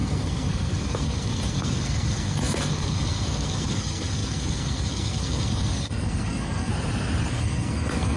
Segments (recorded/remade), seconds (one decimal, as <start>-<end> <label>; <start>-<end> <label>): 0.0-6.7 remade; 6.7-7.3 recorded; 7.3-8.2 remade